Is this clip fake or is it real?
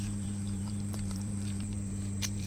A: fake